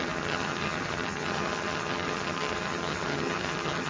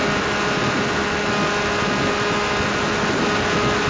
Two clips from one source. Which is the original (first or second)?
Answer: second